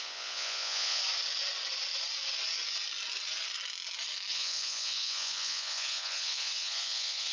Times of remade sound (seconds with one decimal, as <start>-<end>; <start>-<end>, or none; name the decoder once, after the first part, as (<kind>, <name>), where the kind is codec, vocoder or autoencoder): 0.0-1.0 (vocoder, Vocos); 4.3-7.3